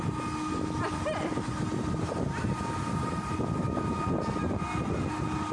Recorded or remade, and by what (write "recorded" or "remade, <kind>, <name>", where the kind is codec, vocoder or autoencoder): recorded